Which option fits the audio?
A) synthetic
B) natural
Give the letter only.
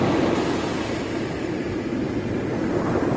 B